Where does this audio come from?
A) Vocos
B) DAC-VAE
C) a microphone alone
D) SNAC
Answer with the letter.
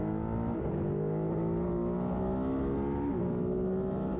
C